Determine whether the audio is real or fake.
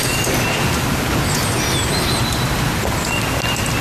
real